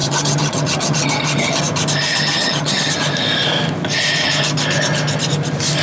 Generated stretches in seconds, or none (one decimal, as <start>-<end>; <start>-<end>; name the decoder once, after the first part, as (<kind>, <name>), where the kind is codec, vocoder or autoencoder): 0.0-1.6 (vocoder, HiFi-GAN); 2.1-2.9